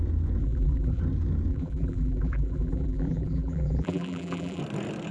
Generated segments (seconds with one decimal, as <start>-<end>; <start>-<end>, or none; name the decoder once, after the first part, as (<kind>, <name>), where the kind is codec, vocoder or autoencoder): 0.4-1.0 (vocoder, BigVGAN v2); 1.5-4.6